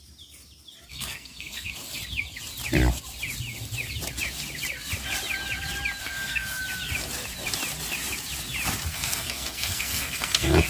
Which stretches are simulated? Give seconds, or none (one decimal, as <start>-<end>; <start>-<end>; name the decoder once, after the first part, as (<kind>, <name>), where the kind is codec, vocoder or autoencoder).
0.9-1.7 (codec, SNAC); 6.0-6.6; 8.9-10.7